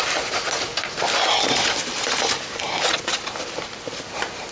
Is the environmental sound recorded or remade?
recorded